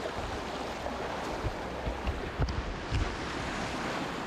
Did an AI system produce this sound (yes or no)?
no